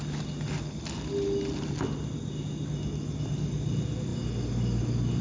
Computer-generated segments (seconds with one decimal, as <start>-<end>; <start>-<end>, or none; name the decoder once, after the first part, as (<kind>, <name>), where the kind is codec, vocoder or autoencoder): none